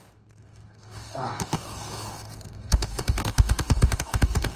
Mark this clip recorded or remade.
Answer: remade